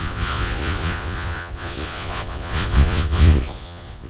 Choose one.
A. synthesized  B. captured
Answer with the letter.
A